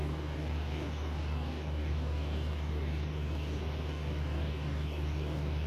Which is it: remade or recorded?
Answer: remade